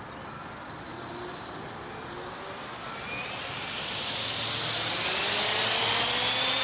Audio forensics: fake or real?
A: real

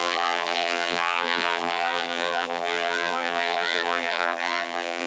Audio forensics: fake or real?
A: fake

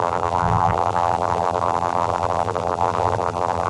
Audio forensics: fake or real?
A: fake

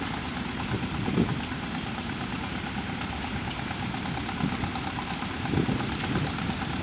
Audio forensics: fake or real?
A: fake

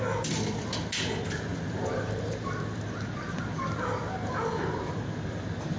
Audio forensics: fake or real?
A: real